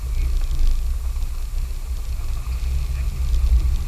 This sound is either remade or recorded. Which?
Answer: recorded